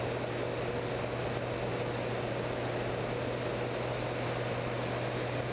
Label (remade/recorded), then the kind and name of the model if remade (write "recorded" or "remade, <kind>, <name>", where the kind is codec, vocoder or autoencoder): recorded